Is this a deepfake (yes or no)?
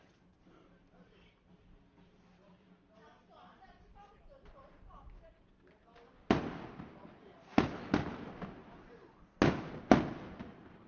no